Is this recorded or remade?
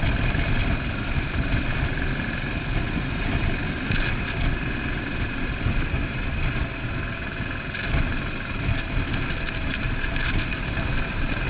recorded